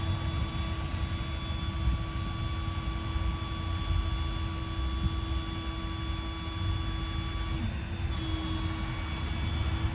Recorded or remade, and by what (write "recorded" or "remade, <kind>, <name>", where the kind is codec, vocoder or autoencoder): recorded